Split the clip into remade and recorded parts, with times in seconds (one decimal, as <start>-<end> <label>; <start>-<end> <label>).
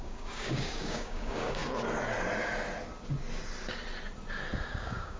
0.0-1.6 remade; 1.6-4.7 recorded; 4.7-5.2 remade